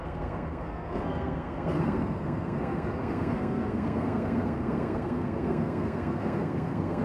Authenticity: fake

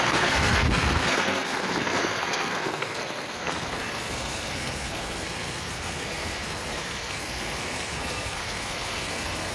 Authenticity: fake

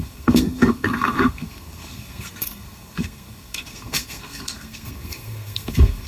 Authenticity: fake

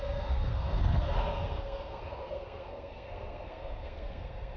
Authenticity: fake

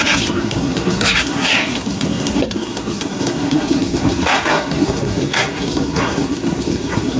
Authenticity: fake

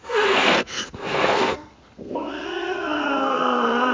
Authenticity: fake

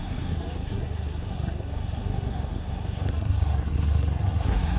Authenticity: fake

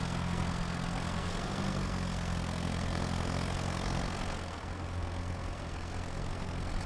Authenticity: fake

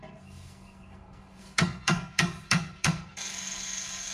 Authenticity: fake